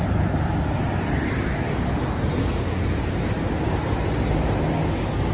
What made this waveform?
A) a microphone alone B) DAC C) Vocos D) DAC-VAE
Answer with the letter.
A